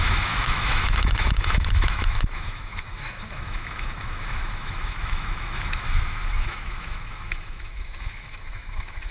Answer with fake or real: fake